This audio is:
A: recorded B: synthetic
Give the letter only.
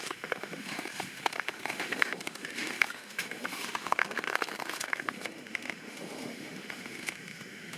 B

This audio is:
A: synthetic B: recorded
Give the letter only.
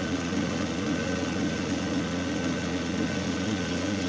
A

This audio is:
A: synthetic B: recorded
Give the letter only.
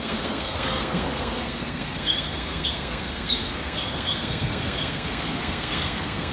A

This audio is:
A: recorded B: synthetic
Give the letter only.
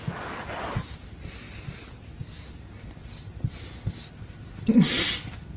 A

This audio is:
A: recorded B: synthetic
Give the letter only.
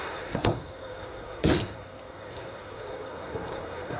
B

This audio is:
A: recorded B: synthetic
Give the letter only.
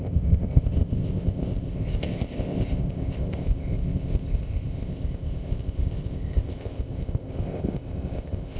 B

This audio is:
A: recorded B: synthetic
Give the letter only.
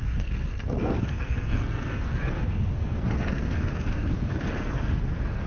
B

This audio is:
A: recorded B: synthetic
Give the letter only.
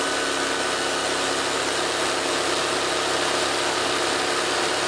A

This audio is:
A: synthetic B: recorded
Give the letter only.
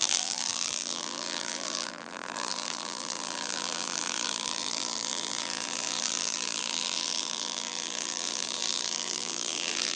A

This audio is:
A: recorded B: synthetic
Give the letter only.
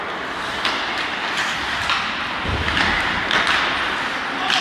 A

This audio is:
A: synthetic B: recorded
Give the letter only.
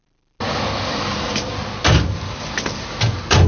B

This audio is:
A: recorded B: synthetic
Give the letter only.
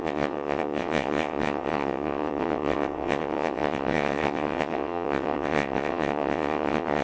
B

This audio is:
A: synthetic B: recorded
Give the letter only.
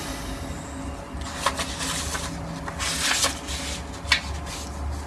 B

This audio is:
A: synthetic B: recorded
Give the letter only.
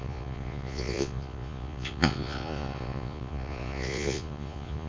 A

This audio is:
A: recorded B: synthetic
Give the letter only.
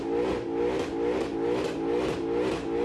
A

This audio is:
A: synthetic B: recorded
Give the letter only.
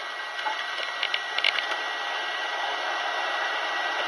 B